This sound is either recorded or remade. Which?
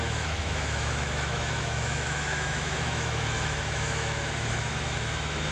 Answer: remade